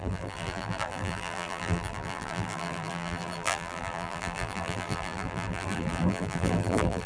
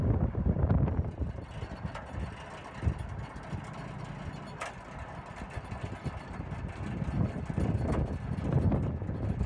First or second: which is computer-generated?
first